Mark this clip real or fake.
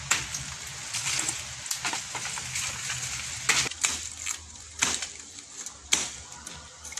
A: real